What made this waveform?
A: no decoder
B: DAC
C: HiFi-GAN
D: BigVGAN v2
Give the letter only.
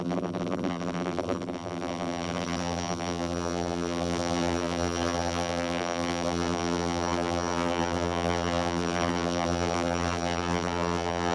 D